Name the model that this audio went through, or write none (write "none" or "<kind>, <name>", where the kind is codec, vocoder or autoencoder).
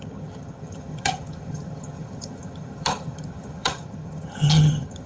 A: vocoder, HiFi-GAN